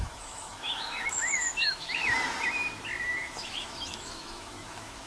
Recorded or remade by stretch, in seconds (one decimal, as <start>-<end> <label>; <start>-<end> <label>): 0.0-2.0 remade; 2.0-3.1 recorded; 3.1-5.1 remade